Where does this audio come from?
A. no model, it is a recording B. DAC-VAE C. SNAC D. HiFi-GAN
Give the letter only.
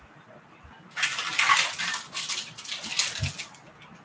A